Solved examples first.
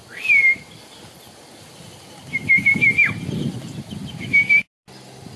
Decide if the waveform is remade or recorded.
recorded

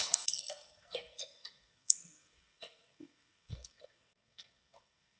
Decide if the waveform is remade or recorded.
remade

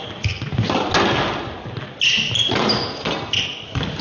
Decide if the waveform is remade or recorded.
recorded